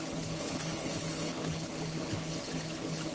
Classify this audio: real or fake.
fake